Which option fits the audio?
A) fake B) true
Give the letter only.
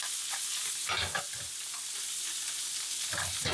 B